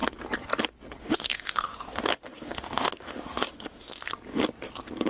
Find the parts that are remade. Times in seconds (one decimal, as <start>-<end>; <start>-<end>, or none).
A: 1.0-4.1